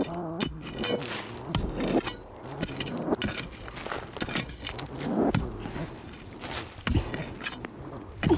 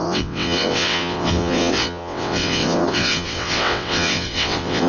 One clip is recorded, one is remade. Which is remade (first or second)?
second